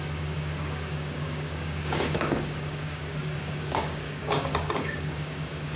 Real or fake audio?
fake